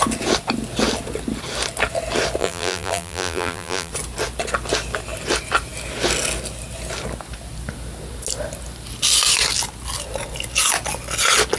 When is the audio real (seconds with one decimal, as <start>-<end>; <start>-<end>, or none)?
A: 0.0-2.4; 3.9-11.6

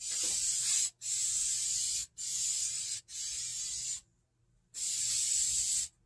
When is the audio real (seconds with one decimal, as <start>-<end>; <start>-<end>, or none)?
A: 0.0-6.1

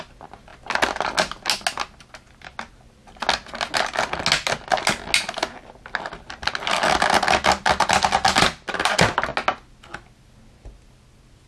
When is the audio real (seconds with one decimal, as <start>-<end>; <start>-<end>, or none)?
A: 0.0-11.5

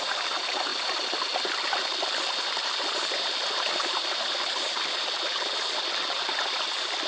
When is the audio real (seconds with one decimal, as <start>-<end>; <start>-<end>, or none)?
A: 0.7-1.5

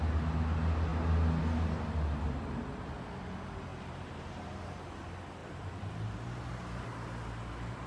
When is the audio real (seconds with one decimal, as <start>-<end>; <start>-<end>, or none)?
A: 0.0-3.7; 4.8-5.4; 5.9-7.9